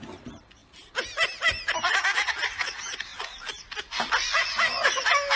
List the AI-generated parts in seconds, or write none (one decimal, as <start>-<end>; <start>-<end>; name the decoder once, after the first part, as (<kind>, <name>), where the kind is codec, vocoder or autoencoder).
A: none